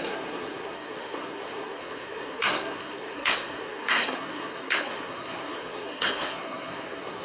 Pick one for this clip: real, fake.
fake